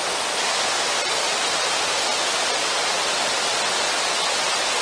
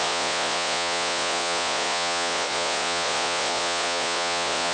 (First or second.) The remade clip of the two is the second